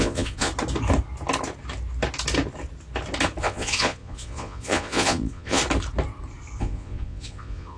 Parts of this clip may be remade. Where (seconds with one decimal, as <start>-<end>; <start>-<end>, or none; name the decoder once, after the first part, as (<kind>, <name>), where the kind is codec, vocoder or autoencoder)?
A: 0.0-0.5 (vocoder, Vocos); 3.4-5.6; 6.6-7.8